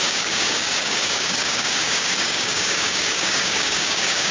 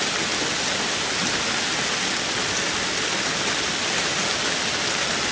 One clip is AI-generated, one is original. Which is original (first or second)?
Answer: second